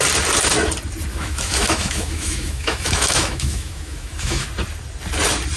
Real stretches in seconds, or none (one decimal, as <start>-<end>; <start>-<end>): 0.0-1.1; 4.5-5.6